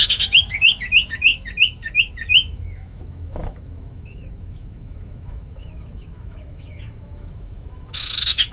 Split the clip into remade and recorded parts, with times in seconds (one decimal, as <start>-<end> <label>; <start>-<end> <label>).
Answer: 0.0-8.5 remade